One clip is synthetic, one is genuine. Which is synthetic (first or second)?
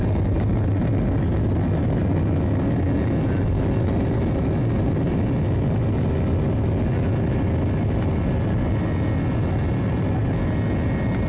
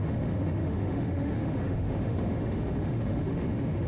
second